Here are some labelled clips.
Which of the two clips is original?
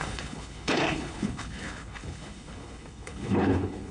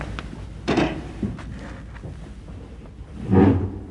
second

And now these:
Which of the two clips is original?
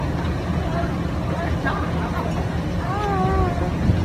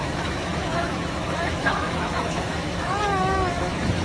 first